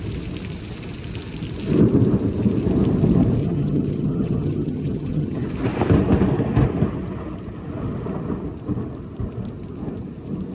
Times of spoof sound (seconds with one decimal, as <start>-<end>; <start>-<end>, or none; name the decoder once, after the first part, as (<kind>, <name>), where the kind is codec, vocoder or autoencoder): 3.4-5.5 (vocoder, HiFi-GAN)